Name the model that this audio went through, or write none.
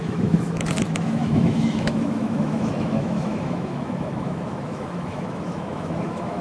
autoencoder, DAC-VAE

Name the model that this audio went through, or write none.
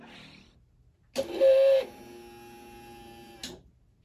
none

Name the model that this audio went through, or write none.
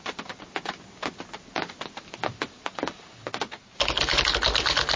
none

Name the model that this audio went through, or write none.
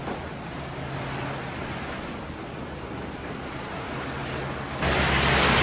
none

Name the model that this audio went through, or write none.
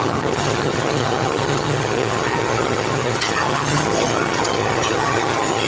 vocoder, HiFi-GAN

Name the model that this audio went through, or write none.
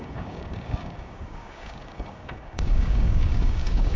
codec, DAC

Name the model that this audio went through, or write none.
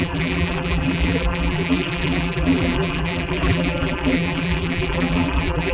vocoder, BigVGAN v2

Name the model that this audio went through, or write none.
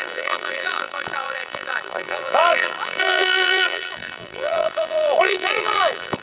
vocoder, BigVGAN v2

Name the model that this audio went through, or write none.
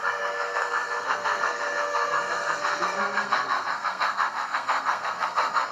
codec, SNAC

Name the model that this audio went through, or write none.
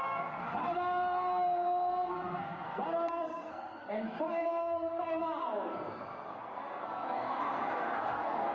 codec, SNAC